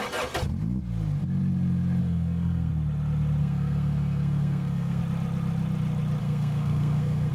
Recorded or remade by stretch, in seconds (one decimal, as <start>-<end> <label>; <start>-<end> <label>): 0.0-2.0 recorded; 2.0-2.7 remade; 2.7-3.4 recorded; 3.4-5.0 remade; 5.0-6.2 recorded; 6.2-7.3 remade

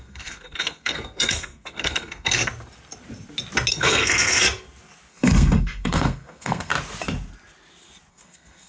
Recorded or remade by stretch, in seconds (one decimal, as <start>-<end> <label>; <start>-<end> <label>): 0.0-2.5 remade; 2.5-3.7 recorded; 3.7-4.4 remade; 4.4-5.1 recorded; 5.1-6.7 remade; 6.7-8.1 recorded; 8.1-8.7 remade